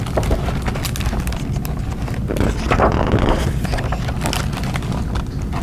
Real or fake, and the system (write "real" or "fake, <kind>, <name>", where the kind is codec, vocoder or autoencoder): real